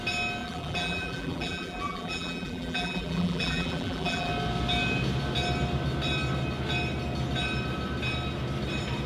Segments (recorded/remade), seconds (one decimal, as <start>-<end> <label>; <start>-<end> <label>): 0.0-0.4 recorded; 0.4-4.3 remade; 4.3-9.1 recorded